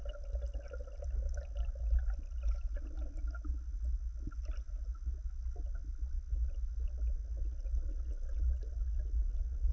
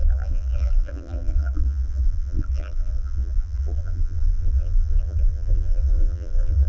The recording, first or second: first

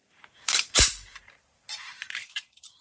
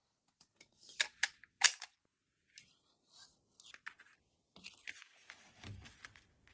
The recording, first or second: second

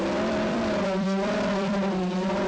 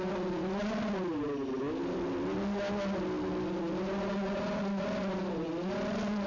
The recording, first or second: second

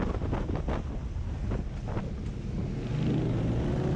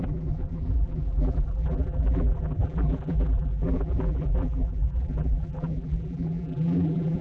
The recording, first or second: first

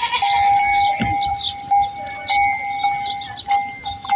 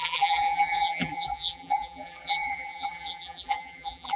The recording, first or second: first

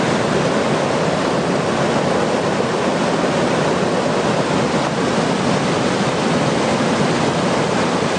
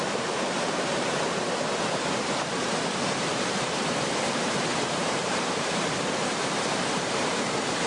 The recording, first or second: first